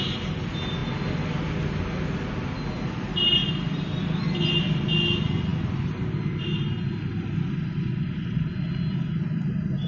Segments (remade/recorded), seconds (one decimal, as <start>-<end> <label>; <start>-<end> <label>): 0.0-3.4 recorded; 3.4-4.0 remade; 4.0-9.9 recorded

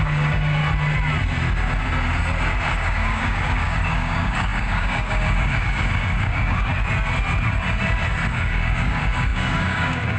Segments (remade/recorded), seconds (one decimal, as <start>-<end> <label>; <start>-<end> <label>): 0.0-0.6 remade; 0.6-2.7 recorded; 2.7-6.7 remade; 6.7-8.3 recorded; 8.3-10.2 remade

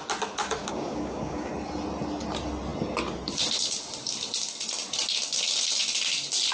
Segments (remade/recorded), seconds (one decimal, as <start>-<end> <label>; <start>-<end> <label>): 0.0-0.6 recorded; 0.6-1.5 remade; 1.5-6.5 recorded

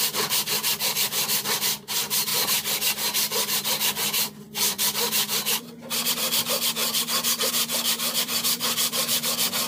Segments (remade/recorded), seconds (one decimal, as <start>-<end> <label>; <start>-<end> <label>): 0.0-9.7 remade

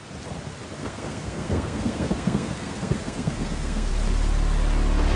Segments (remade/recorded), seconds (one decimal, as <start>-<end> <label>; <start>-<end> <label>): 0.0-0.8 recorded; 0.8-3.9 remade; 3.9-5.2 recorded